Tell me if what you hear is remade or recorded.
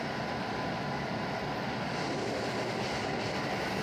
recorded